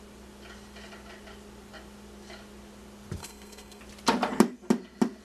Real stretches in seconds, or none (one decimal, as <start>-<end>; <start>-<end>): 0.0-3.2; 3.8-5.2